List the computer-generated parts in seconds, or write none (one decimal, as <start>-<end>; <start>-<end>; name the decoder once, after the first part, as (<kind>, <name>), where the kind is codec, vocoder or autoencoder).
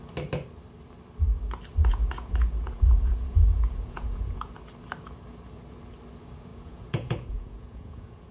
1.8-4.5 (vocoder, Vocos); 6.5-8.3